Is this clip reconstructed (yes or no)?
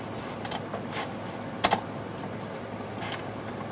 no